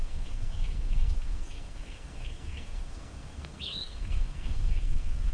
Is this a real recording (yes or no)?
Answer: no